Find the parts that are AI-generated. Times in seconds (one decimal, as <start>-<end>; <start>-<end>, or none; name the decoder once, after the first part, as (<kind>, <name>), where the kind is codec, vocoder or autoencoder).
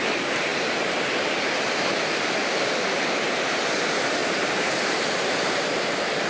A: 0.0-2.4 (vocoder, BigVGAN v2); 3.4-6.3